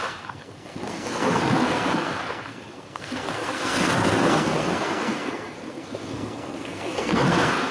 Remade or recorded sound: remade